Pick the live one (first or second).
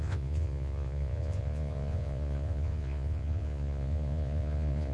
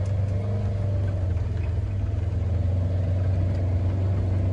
second